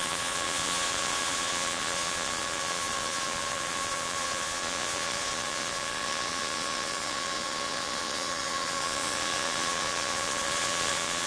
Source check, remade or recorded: remade